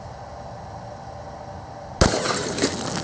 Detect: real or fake real